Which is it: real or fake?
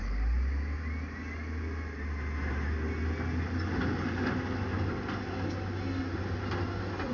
real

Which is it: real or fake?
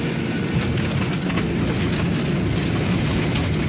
real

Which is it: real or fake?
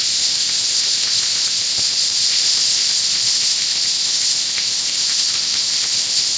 fake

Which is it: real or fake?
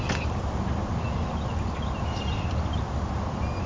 real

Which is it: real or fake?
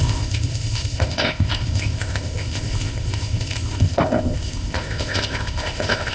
fake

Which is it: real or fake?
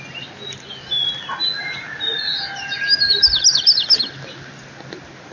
real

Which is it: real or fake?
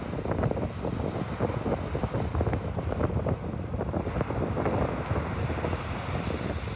real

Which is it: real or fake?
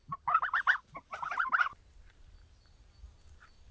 real